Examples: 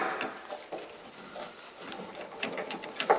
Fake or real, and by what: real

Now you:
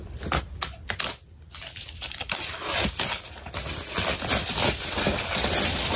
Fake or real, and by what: real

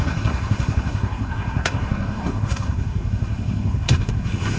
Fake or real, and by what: fake, codec, SNAC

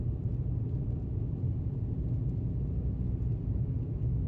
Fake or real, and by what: real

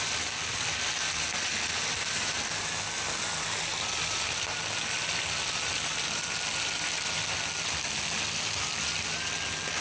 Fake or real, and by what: real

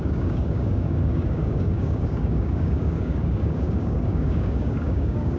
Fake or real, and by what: fake, codec, DAC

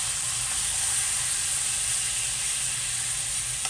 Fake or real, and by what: real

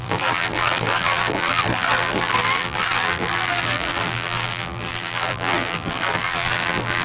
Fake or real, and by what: fake, vocoder, BigVGAN v2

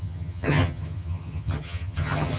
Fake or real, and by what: fake, vocoder, HiFi-GAN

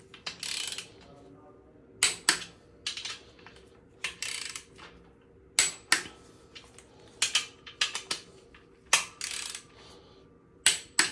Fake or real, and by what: real